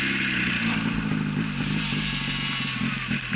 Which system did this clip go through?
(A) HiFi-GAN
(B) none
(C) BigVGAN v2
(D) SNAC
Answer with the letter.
B